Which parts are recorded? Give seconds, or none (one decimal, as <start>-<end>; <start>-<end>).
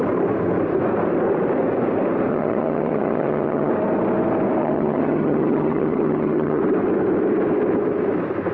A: 0.0-2.3; 3.7-4.6; 6.6-8.5